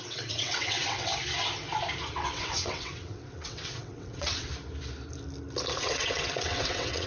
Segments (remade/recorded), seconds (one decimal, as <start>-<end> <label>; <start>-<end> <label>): 0.0-1.1 remade; 1.1-2.1 recorded; 2.1-4.5 remade; 4.5-5.8 recorded; 5.8-7.1 remade